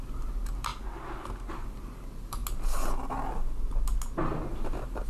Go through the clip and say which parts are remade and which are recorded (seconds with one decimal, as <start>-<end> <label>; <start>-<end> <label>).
0.0-0.7 remade; 0.7-1.5 recorded; 1.5-2.4 remade; 2.4-4.5 recorded; 4.5-5.1 remade